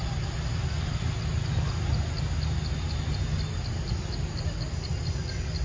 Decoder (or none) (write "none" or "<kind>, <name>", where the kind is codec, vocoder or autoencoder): none